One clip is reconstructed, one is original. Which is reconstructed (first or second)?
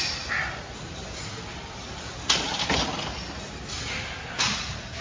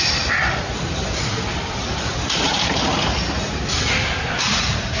second